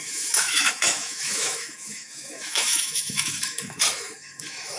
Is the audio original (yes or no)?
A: no